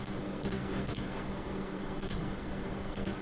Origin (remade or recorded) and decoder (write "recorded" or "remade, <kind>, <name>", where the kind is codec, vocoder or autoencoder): remade, codec, SNAC